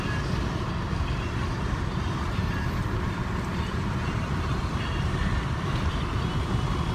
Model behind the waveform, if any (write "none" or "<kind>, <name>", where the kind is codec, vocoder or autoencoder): vocoder, BigVGAN v2